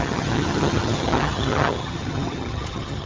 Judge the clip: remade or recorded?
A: remade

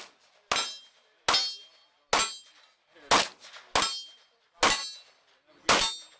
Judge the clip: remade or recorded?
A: recorded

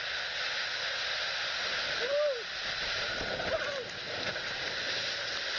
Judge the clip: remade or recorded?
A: recorded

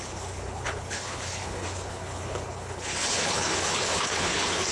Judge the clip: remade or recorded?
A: remade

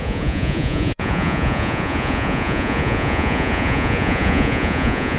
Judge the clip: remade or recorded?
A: remade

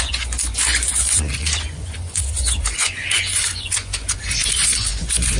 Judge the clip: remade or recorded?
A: remade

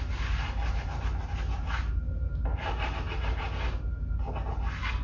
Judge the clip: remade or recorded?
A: recorded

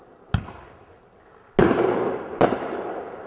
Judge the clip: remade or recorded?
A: recorded